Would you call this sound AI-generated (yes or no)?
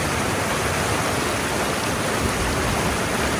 no